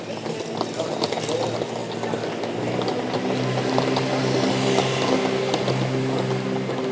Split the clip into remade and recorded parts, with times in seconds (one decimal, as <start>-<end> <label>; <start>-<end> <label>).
0.0-6.9 recorded